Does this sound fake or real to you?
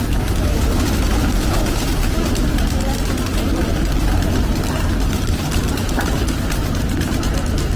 real